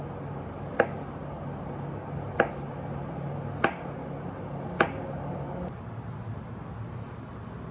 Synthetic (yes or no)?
no